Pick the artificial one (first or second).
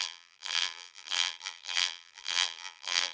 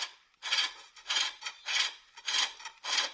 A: first